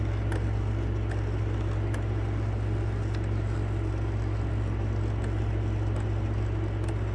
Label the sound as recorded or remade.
recorded